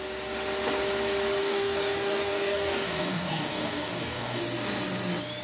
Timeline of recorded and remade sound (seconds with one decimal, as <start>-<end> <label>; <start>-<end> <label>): 0.0-1.4 recorded; 1.4-4.4 remade; 4.4-5.4 recorded